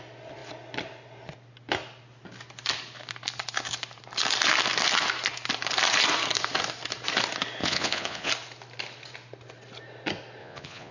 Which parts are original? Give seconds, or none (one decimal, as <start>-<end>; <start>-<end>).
0.0-7.6; 8.3-10.4